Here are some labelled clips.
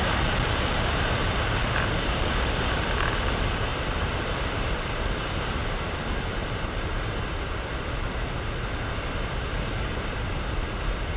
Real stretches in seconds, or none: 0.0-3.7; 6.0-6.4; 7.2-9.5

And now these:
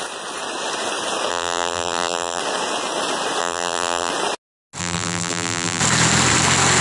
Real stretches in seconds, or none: 0.0-1.3; 2.4-3.4; 4.1-4.8; 5.8-6.8

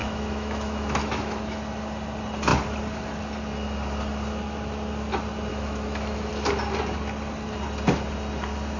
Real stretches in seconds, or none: 1.6-5.5; 6.3-8.8

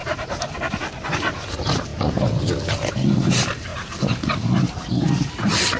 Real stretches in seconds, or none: 0.7-5.8